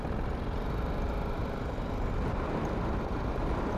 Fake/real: real